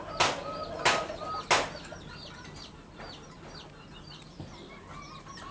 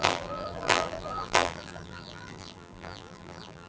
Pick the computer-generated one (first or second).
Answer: second